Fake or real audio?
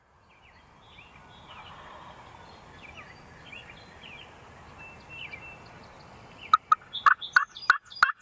real